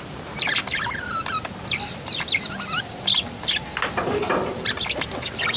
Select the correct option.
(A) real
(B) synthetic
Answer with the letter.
A